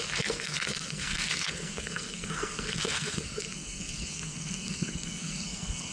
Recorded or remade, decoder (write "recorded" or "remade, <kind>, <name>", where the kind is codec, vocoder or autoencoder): remade, codec, SNAC